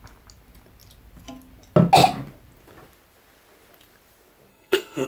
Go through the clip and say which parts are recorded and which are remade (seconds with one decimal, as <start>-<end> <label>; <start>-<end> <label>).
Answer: 0.0-4.5 recorded; 4.5-5.1 remade